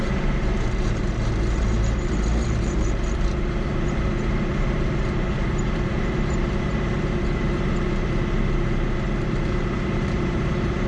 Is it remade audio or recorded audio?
remade